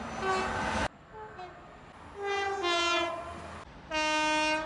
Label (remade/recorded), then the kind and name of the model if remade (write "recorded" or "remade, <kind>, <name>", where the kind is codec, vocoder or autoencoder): recorded